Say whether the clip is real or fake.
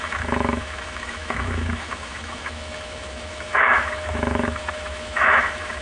fake